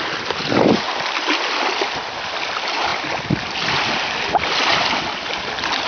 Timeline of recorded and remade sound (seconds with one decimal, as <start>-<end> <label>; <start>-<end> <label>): 0.0-5.9 recorded